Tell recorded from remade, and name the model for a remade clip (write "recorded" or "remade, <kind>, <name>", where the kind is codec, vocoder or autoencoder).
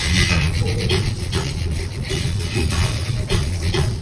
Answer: remade, vocoder, Vocos